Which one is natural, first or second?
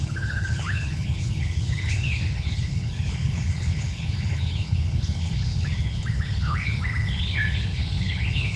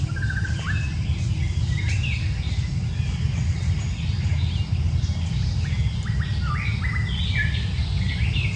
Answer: second